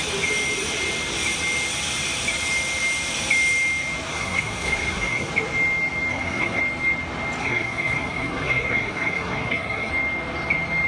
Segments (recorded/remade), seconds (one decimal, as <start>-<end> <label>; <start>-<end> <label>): 0.0-4.1 recorded; 4.1-5.3 remade; 5.3-6.1 recorded; 6.1-6.6 remade; 6.6-7.4 recorded; 7.4-9.9 remade; 9.9-10.9 recorded